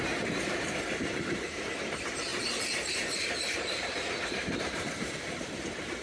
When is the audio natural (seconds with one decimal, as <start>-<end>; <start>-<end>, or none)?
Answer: none